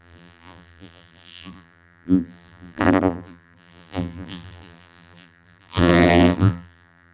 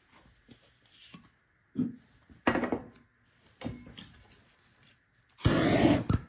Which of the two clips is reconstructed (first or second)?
first